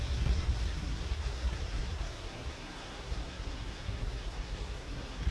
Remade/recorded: remade